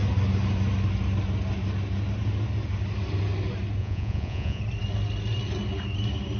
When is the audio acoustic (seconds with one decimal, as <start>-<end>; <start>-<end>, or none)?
0.0-3.8; 4.6-6.4